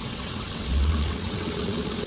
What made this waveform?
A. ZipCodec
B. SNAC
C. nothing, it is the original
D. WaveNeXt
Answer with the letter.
D